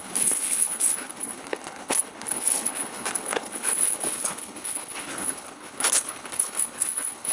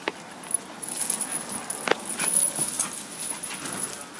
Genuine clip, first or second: second